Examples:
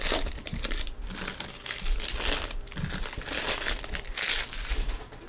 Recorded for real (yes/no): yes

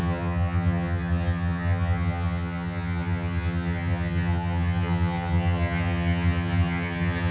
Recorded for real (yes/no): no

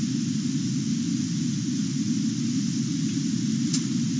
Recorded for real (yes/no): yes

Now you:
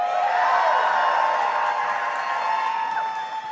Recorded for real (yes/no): yes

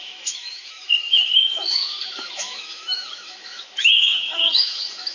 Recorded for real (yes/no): no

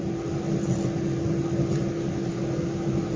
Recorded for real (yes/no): yes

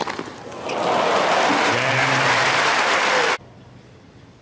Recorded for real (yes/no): yes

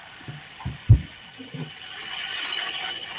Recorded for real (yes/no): yes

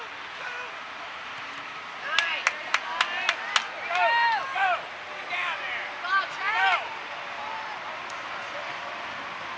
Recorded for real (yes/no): yes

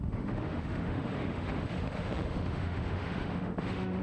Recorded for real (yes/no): no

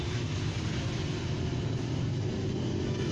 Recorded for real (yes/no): yes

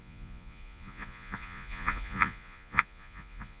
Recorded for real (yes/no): no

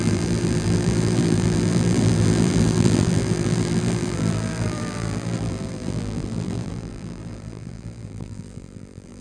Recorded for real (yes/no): no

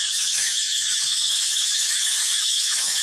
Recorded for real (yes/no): no